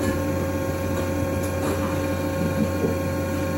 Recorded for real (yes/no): yes